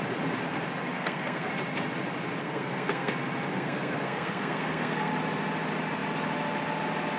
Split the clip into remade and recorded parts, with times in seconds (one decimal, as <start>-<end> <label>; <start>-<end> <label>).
0.0-0.9 recorded; 0.9-1.5 remade; 1.5-2.4 recorded; 2.4-3.1 remade; 3.1-3.5 recorded; 3.5-5.1 remade; 5.1-7.2 recorded